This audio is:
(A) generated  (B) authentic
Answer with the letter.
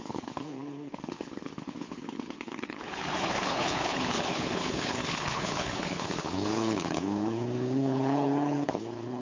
A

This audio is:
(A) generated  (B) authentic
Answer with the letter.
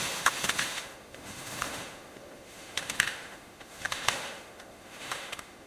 A